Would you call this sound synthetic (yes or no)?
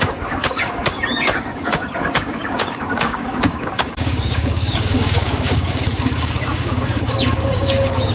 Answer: yes